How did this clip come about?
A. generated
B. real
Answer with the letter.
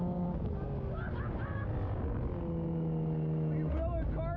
B